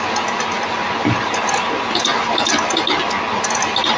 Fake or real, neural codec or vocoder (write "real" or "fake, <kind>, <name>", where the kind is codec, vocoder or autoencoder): real